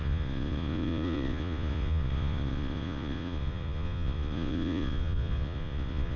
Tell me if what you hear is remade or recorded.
remade